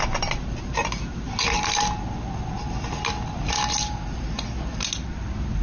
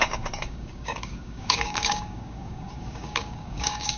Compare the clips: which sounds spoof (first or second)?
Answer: second